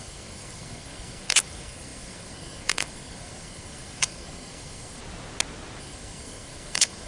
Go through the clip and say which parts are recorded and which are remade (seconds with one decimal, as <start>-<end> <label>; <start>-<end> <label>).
0.0-5.0 remade; 5.0-5.8 recorded; 5.8-7.1 remade